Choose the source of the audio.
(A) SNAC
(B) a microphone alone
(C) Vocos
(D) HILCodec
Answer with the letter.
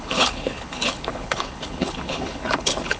D